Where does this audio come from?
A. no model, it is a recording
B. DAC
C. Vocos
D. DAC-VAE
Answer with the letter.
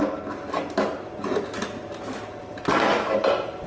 A